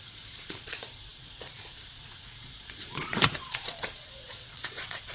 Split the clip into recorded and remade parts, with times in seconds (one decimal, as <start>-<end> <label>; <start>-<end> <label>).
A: 0.0-5.1 remade

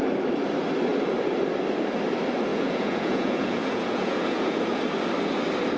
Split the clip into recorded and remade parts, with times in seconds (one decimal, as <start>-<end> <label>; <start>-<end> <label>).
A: 0.0-2.5 recorded; 2.5-4.8 remade; 4.8-5.8 recorded

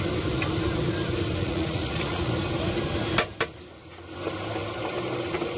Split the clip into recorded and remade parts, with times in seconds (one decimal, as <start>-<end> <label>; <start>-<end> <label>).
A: 0.0-1.4 recorded; 1.4-2.3 remade; 2.3-5.6 recorded

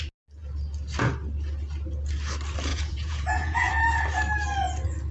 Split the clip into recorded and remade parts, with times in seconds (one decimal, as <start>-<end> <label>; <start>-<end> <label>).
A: 0.0-2.7 recorded; 2.7-3.7 remade; 3.7-5.1 recorded

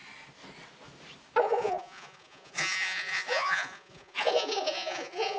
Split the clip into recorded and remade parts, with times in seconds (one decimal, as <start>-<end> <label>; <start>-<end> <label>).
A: 0.0-1.4 recorded; 1.4-5.4 remade

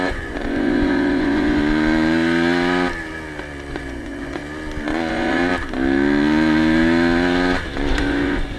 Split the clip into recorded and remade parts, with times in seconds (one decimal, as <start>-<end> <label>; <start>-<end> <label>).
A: 0.0-1.6 remade; 1.6-3.7 recorded; 3.7-4.4 remade; 4.4-5.1 recorded; 5.1-5.5 remade; 5.5-7.9 recorded; 7.9-8.6 remade